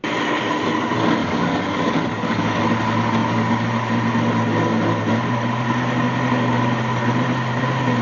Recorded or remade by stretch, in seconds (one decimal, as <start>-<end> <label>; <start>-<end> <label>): 0.0-1.2 recorded; 1.2-2.6 remade; 2.6-8.0 recorded